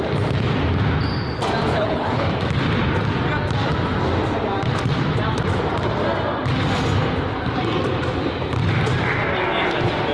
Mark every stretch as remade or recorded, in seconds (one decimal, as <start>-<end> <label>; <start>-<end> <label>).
0.0-1.7 recorded; 1.7-2.3 remade; 2.3-10.1 recorded

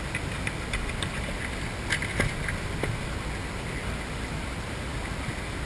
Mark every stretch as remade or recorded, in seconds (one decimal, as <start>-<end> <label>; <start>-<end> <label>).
0.0-5.7 recorded

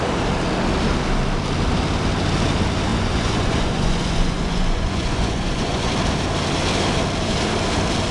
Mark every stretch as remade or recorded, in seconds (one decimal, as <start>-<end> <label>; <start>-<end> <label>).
0.0-2.9 recorded; 2.9-5.9 remade; 5.9-8.1 recorded

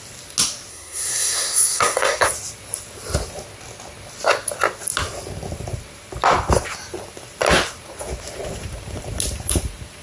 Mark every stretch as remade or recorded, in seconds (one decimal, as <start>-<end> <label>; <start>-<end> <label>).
0.0-0.7 recorded; 0.7-2.3 remade; 2.3-10.0 recorded

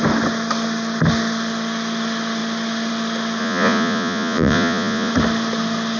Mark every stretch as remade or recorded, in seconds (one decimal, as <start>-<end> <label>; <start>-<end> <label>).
0.0-3.4 recorded; 3.4-5.1 remade; 5.1-6.0 recorded